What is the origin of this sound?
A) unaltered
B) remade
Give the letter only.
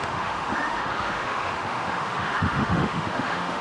B